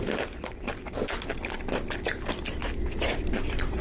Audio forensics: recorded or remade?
recorded